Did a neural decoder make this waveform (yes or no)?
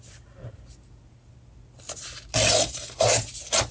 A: no